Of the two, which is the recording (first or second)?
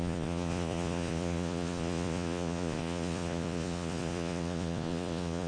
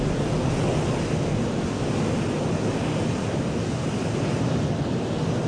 second